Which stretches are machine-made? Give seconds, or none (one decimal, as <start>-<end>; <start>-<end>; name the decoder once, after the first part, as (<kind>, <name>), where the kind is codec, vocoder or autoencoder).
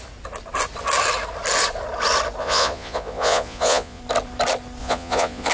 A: 2.4-4.0 (vocoder, Vocos); 4.8-5.5